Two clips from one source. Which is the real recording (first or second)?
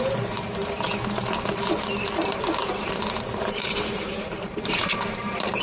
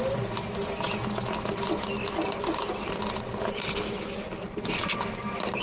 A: second